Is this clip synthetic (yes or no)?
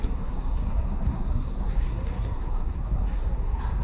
yes